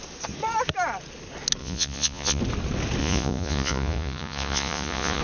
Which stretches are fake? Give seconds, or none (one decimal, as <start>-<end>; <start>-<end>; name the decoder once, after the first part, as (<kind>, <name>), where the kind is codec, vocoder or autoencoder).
1.6-2.4 (vocoder, Vocos); 3.0-5.2